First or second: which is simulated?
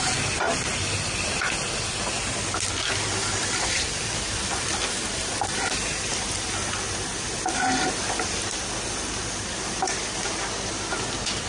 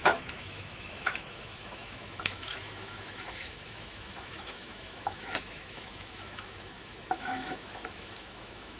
second